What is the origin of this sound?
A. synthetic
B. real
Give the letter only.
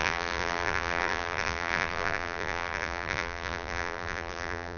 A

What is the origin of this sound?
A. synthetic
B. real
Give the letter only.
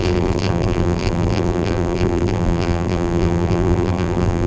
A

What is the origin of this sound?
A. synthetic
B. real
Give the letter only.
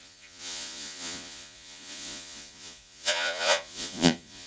A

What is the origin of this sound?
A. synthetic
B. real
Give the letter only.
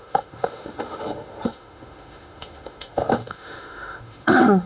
A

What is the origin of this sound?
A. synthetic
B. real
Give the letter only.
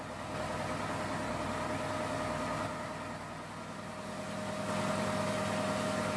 B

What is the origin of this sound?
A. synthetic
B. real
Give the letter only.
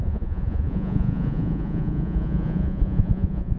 A